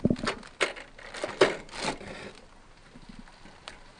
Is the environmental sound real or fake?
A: real